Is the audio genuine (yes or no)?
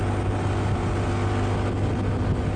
yes